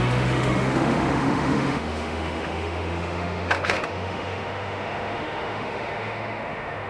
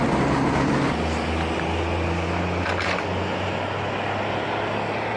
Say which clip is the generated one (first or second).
first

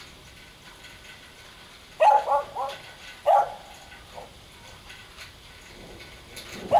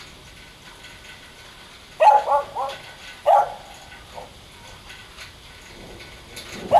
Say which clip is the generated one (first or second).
first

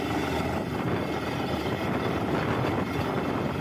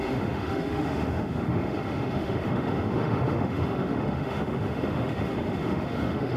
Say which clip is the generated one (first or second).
second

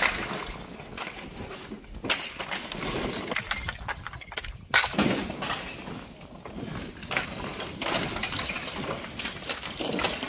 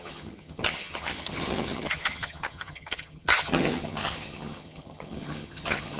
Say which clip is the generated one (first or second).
second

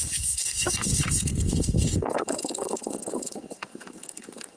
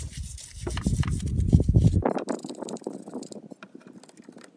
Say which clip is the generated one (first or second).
first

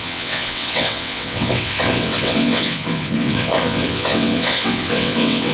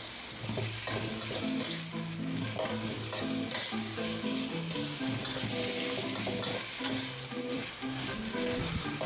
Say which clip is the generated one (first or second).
first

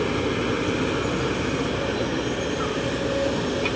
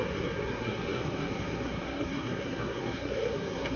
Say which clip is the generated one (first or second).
second